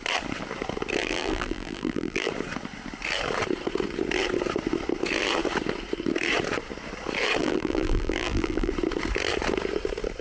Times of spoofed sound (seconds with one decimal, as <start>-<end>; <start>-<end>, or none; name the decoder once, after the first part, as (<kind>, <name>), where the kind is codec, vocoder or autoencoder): 1.0-2.3 (vocoder, BigVGAN v2); 7.4-8.7